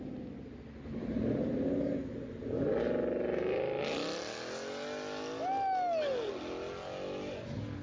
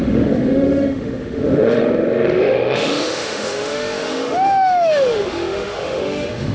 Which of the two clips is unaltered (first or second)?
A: first